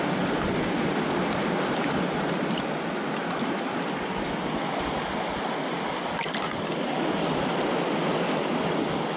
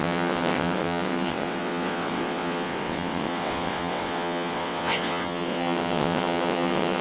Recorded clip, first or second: first